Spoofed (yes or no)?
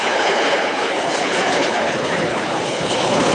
yes